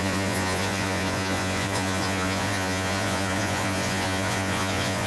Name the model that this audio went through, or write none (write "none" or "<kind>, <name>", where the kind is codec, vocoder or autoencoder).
vocoder, Vocos